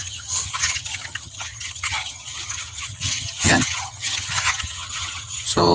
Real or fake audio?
fake